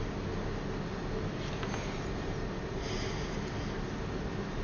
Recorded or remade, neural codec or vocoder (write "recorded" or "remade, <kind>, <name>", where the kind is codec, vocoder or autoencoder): recorded